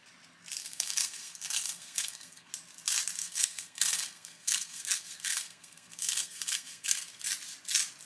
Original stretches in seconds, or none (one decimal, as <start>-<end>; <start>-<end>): 0.0-0.6; 2.5-3.2; 7.2-8.1